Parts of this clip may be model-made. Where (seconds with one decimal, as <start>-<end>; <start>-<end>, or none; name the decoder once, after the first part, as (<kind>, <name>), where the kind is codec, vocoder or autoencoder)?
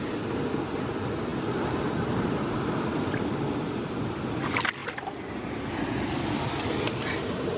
none